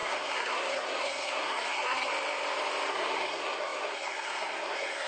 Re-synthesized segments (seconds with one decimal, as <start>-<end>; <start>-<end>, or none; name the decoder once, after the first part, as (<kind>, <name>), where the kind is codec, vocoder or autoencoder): 0.0-2.1 (codec, SNAC); 2.9-5.1